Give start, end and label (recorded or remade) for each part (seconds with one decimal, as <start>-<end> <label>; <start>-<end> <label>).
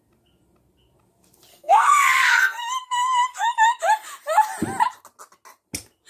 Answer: 0.0-1.5 recorded; 1.5-3.8 remade; 3.8-6.1 recorded